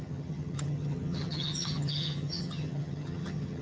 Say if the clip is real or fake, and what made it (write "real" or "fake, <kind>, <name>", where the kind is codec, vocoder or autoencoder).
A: fake, vocoder, HiFi-GAN